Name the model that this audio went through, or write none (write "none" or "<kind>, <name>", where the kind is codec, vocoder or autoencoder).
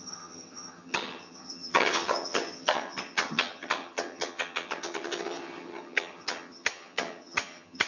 vocoder, HiFi-GAN